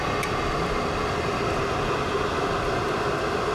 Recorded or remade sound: recorded